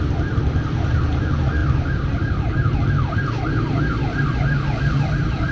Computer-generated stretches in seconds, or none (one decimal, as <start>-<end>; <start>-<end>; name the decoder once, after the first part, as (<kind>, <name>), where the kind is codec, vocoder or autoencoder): none